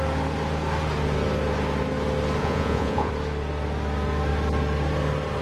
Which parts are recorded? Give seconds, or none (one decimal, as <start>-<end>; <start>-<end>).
0.0-2.4; 3.1-5.4